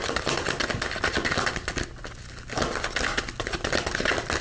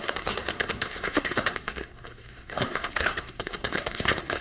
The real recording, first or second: first